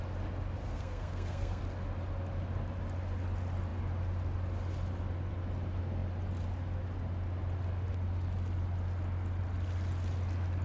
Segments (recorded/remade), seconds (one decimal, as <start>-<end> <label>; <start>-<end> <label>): 0.0-0.6 recorded; 0.6-1.6 remade; 1.6-10.6 recorded